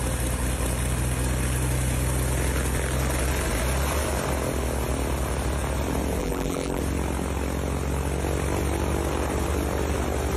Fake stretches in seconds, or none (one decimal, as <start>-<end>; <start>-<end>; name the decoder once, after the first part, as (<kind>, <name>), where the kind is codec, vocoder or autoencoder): 6.2-6.8 (vocoder, BigVGAN v2)